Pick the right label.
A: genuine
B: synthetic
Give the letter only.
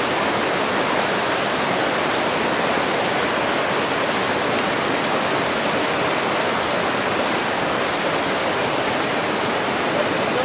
A